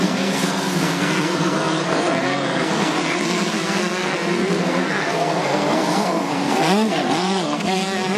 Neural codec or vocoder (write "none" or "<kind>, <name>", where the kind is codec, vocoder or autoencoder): codec, SNAC